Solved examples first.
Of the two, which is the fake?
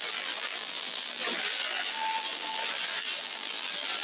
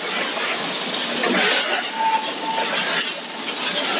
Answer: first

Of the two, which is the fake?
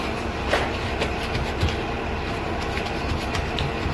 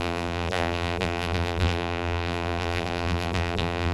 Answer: second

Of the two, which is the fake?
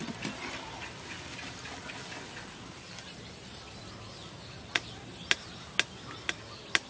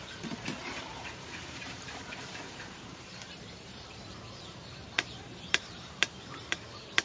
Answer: second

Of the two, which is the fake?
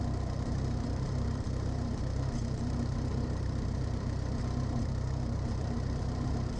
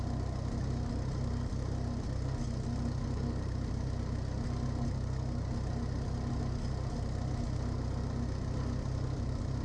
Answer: first